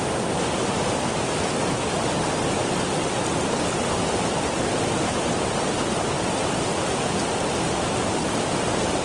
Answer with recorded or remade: recorded